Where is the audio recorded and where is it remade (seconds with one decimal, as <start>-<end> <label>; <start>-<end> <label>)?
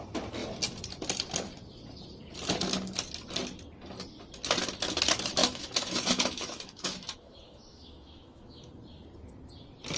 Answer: 0.0-5.4 recorded; 5.4-8.7 remade; 8.7-10.0 recorded